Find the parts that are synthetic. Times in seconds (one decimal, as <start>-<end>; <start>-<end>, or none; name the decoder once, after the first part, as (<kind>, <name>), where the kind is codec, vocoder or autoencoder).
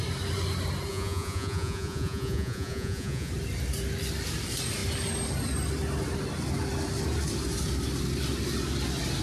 0.9-3.3 (vocoder, Vocos)